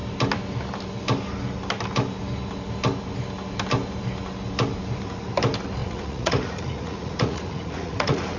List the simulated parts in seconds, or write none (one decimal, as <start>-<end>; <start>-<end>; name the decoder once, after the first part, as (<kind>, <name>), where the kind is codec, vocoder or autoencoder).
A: 5.8-8.4 (vocoder, Vocos)